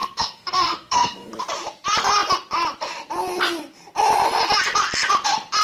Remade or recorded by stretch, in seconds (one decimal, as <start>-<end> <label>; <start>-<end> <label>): 0.0-1.3 remade; 1.3-5.6 recorded